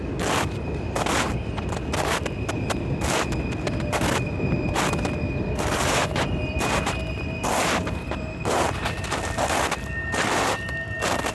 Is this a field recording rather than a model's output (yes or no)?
yes